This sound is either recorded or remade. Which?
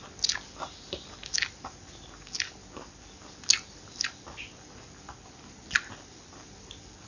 recorded